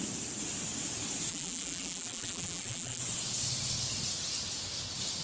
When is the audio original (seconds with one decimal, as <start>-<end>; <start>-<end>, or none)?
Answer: 0.0-1.3; 3.0-5.2